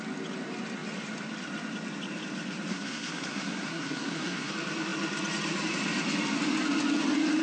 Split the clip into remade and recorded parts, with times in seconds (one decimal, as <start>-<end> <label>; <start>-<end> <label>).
0.0-2.7 recorded; 2.7-4.5 remade; 4.5-7.4 recorded